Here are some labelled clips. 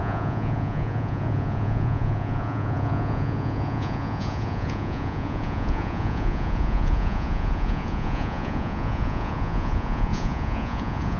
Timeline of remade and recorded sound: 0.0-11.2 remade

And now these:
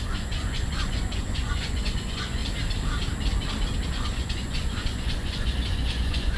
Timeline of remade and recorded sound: 0.0-2.4 remade; 2.4-3.9 recorded; 3.9-6.4 remade

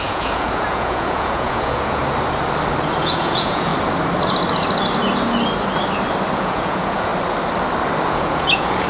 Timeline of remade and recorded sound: 0.0-2.0 remade; 2.0-3.0 recorded; 3.0-3.7 remade; 3.7-6.3 recorded; 6.3-7.1 remade; 7.1-8.1 recorded; 8.1-8.9 remade

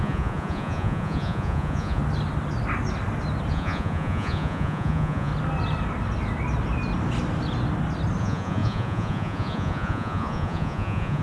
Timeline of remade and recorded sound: 0.0-2.0 remade; 2.0-3.5 recorded; 3.5-5.3 remade; 5.3-8.2 recorded; 8.2-11.2 remade